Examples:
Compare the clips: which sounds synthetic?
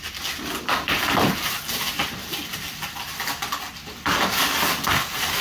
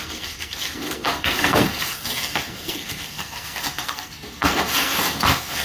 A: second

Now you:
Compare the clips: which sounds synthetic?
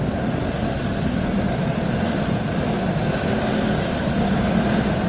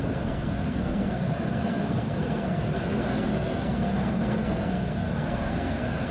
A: second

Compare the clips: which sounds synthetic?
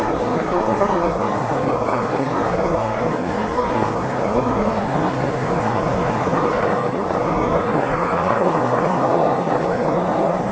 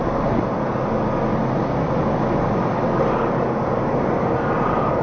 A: first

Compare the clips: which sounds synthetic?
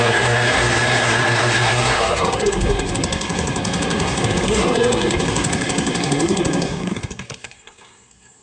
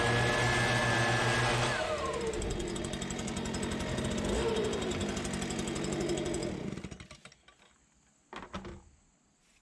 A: first